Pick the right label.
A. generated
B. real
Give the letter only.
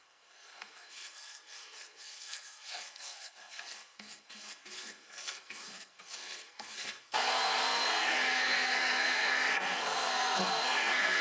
A